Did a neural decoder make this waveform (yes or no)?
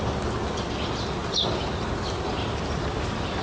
no